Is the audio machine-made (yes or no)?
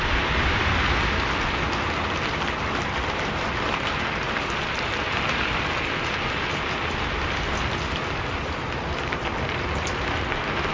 no